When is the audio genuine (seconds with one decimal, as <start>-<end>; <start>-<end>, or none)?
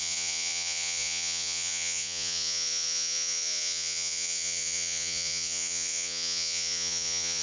none